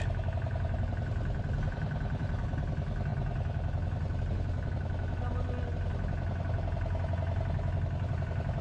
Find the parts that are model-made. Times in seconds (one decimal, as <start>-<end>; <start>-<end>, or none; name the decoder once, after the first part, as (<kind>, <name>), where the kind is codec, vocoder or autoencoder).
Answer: none